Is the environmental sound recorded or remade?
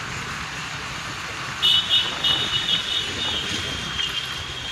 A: recorded